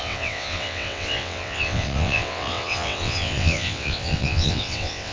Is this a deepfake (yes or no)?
yes